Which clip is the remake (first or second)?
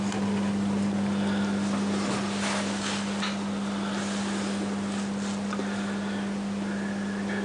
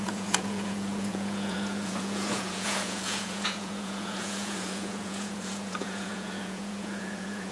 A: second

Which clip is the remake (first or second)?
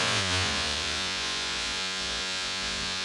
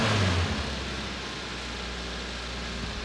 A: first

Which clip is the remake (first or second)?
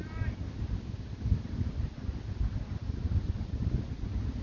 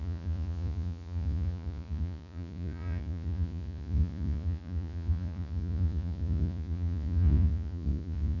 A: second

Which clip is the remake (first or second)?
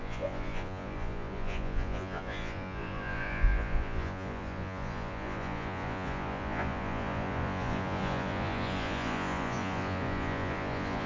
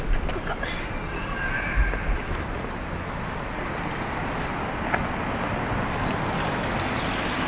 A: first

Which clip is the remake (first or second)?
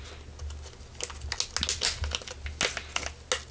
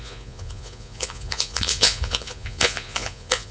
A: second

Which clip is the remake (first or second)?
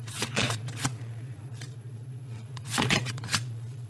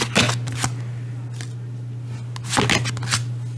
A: first